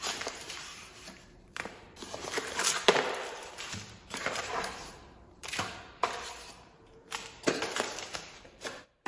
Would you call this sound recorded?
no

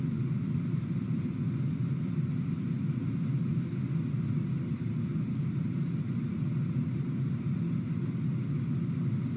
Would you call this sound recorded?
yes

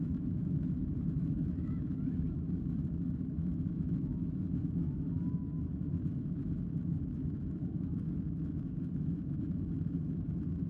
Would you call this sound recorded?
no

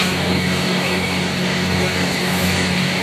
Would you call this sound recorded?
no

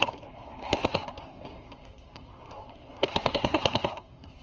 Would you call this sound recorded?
no